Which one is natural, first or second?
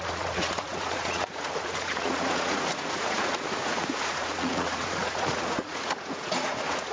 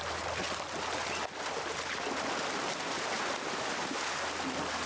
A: second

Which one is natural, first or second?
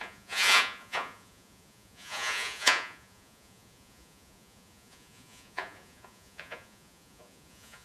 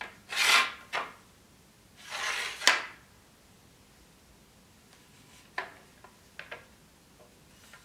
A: second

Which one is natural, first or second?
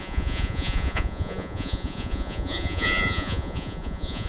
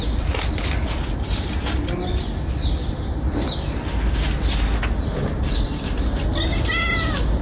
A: second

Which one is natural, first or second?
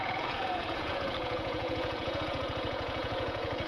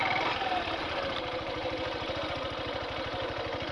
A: second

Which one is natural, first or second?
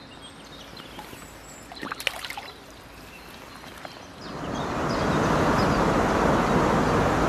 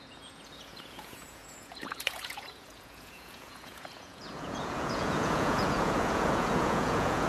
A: first